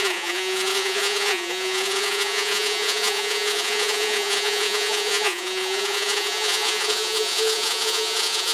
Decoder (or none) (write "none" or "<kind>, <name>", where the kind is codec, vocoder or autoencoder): vocoder, Vocos